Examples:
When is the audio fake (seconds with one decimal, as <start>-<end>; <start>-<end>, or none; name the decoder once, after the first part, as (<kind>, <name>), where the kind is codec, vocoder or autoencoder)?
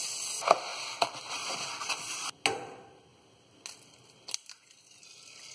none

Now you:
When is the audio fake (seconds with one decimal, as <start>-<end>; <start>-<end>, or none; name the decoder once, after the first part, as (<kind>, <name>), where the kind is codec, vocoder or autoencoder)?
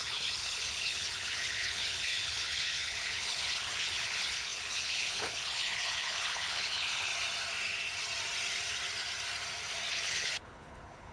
0.0-7.1 (codec, HILCodec); 9.9-11.1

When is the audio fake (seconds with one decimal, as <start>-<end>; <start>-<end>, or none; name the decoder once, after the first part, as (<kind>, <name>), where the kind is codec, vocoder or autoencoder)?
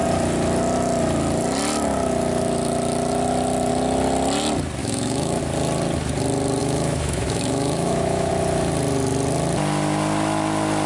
4.8-5.4 (autoencoder, DAC-VAE); 6.6-8.3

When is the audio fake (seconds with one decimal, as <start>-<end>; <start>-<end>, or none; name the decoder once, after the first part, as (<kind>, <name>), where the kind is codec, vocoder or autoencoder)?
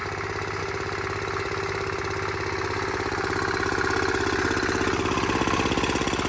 none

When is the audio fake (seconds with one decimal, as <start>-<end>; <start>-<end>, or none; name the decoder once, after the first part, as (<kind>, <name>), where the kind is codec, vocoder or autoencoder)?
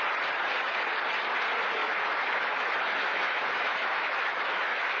1.8-5.0 (autoencoder, DAC-VAE)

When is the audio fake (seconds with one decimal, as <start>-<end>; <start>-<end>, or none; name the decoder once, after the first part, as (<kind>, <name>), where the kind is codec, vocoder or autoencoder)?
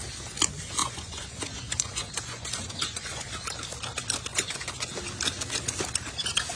0.8-3.2 (vocoder, Vocos); 4.3-4.9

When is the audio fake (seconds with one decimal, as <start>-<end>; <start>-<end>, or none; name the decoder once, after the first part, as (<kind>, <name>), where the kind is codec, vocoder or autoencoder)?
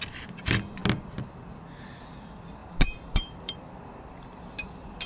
2.6-3.6 (vocoder, BigVGAN v2)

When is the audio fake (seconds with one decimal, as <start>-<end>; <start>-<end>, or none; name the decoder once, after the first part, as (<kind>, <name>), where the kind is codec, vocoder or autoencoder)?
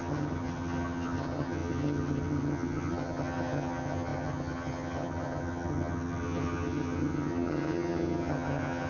0.0-8.9 (vocoder, HiFi-GAN)